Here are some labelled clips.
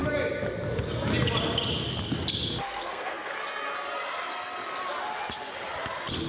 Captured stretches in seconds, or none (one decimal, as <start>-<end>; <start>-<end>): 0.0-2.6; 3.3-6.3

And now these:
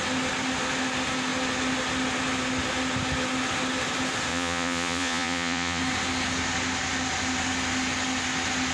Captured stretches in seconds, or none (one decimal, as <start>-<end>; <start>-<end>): 0.0-4.3; 5.8-8.7

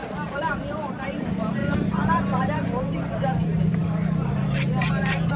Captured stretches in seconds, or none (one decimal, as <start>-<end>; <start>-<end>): 0.0-0.5; 1.6-3.2; 3.8-5.0

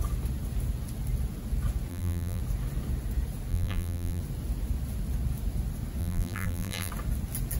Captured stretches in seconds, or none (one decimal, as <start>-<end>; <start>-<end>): 0.0-1.9; 2.4-3.5; 4.2-6.0; 6.9-7.6